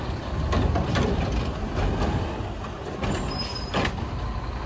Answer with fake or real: real